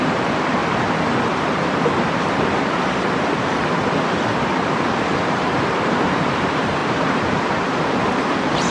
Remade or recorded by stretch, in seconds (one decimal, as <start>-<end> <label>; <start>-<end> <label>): 0.0-0.6 remade; 0.6-2.2 recorded; 2.2-3.6 remade; 3.6-4.6 recorded; 4.6-8.7 remade